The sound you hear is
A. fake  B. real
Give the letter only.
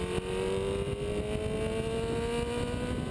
B